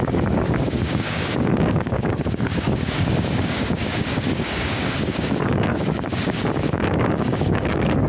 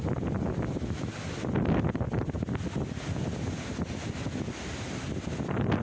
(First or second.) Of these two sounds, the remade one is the first